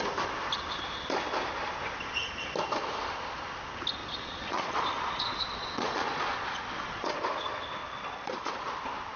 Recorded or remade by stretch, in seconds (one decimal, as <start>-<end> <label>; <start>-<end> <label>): 0.0-4.0 recorded; 4.0-7.1 remade; 7.1-7.8 recorded; 7.8-8.5 remade; 8.5-9.2 recorded